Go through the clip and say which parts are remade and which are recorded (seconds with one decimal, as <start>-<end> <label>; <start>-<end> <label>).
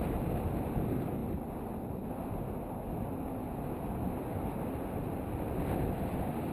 0.0-6.5 recorded